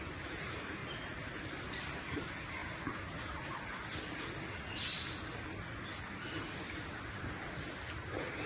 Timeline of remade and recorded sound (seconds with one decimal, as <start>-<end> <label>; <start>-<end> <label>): 0.0-0.8 remade; 0.8-2.1 recorded; 2.1-2.6 remade; 2.6-7.7 recorded; 7.7-8.5 remade